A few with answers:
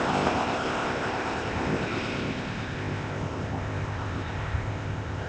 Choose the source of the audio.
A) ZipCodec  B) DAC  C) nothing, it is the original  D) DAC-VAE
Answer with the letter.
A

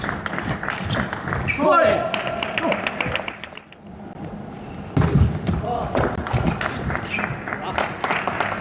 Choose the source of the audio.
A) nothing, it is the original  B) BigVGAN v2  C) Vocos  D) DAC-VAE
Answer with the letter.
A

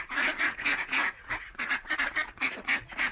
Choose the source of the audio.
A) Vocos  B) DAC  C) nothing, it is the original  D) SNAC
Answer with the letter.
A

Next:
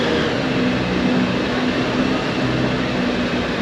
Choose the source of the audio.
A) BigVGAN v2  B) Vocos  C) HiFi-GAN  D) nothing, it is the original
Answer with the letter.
D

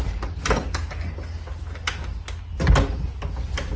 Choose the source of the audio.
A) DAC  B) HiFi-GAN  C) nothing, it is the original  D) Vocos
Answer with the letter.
C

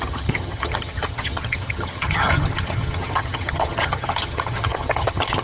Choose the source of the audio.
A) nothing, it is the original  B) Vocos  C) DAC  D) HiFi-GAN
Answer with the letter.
D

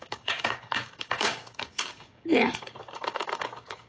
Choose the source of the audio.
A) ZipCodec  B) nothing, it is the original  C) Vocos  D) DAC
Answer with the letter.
D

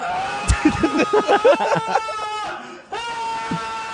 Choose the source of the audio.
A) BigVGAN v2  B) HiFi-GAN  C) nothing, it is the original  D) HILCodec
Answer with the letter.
C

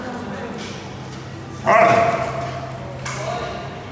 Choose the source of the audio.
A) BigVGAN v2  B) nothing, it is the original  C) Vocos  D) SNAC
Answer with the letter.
B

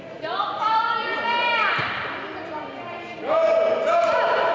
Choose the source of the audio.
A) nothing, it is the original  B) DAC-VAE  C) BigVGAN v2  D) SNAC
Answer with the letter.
A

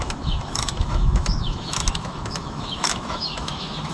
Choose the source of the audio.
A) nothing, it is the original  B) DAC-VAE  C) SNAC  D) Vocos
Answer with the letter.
B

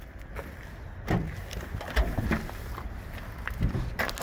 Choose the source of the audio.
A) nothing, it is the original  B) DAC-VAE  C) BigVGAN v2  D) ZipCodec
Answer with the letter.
A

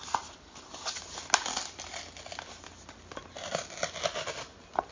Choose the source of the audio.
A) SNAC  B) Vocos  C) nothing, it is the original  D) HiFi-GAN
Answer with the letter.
C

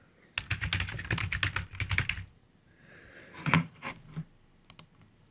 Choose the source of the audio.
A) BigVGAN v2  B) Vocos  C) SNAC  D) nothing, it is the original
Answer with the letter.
D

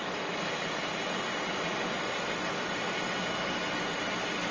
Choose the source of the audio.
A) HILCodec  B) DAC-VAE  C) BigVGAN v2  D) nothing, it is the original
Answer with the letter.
C